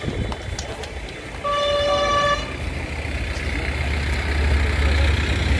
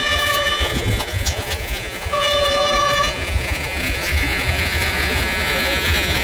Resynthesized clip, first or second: second